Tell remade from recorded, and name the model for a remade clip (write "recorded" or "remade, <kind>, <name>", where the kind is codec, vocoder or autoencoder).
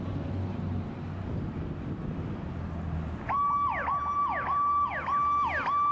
recorded